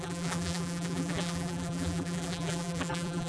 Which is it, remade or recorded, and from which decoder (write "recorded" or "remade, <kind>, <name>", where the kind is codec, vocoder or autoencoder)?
remade, vocoder, BigVGAN v2